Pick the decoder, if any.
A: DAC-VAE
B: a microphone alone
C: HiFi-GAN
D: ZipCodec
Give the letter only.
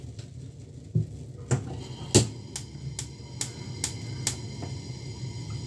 B